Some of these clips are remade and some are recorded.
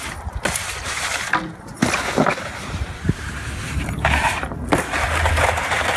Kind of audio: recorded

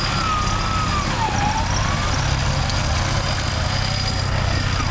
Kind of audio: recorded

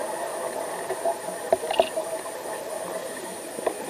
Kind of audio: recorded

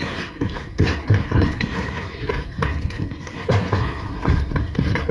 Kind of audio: remade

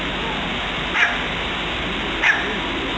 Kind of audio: recorded